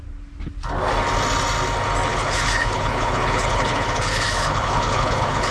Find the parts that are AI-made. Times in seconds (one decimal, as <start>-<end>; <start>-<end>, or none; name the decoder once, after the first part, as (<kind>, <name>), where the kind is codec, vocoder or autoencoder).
2.1-5.5 (codec, HILCodec)